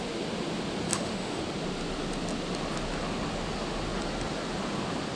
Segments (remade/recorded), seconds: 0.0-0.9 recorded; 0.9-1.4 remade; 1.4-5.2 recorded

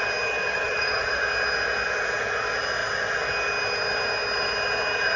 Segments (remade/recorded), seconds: 0.0-0.5 recorded; 0.5-1.2 remade; 1.2-5.2 recorded

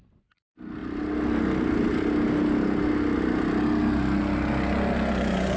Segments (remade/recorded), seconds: 0.0-5.6 recorded

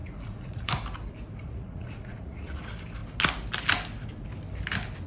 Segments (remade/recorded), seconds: 0.0-0.7 remade; 0.7-1.4 recorded; 1.4-2.6 remade; 2.6-5.1 recorded

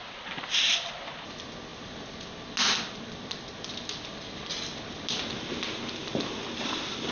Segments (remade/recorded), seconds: 0.0-7.1 recorded

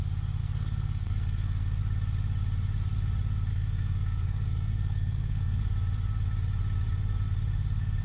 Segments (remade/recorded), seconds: 0.0-0.4 recorded; 0.4-1.8 remade; 1.8-3.5 recorded; 3.5-5.6 remade; 5.6-8.0 recorded

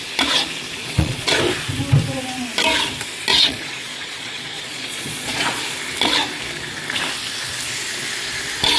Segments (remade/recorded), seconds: 0.0-0.8 recorded; 0.8-1.4 remade; 1.4-3.3 recorded; 3.3-5.6 remade; 5.6-8.8 recorded